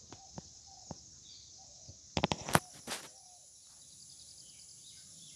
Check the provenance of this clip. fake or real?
real